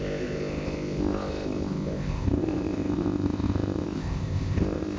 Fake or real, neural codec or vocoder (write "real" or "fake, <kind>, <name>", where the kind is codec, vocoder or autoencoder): fake, codec, ZipCodec